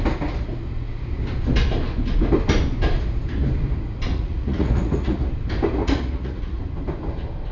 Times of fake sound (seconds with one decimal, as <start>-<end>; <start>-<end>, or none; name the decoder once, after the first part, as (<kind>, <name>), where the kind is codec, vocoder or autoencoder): 4.1-5.3 (vocoder, Vocos); 5.8-6.6